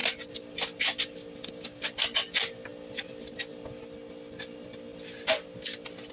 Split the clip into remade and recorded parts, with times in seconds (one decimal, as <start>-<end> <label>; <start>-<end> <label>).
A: 0.0-6.1 recorded